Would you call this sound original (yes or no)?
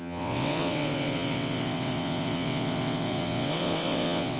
no